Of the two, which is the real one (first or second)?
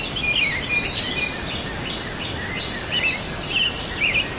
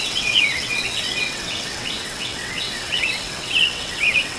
first